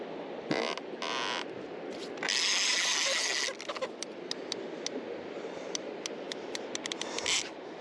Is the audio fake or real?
real